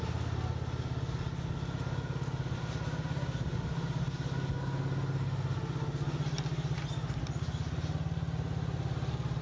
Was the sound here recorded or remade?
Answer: recorded